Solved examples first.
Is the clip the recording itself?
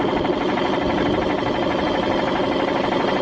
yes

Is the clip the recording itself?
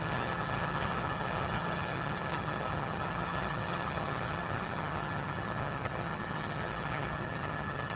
no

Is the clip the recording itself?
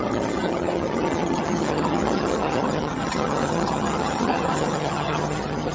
no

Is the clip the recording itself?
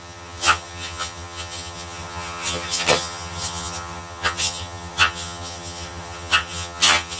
no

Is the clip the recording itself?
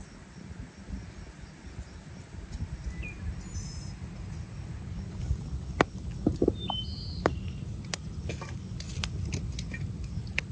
yes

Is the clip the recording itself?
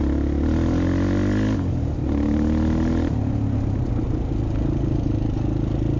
yes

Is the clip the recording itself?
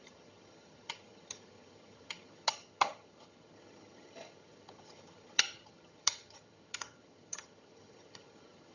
no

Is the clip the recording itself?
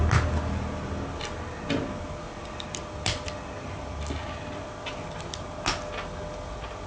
yes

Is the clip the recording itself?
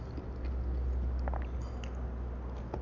yes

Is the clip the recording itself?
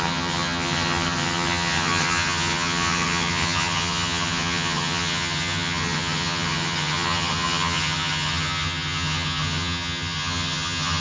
no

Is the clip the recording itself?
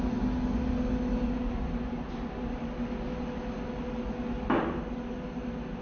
yes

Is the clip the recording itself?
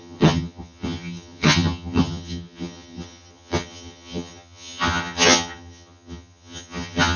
no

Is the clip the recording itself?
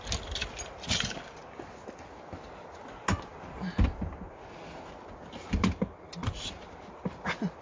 yes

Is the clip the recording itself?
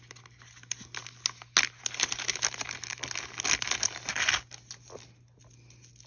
yes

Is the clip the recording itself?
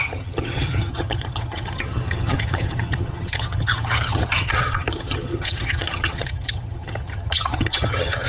no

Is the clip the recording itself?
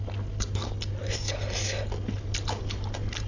yes